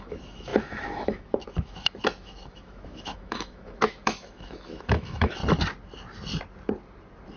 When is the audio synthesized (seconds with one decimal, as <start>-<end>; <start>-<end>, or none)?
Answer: 0.0-5.4